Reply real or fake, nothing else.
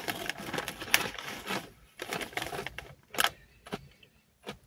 real